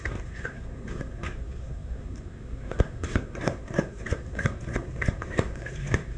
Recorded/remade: remade